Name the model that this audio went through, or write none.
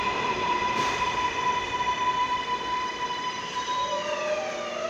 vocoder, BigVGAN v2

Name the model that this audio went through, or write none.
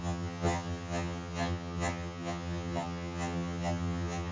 vocoder, HiFi-GAN